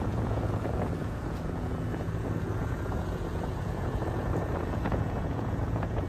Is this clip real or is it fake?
fake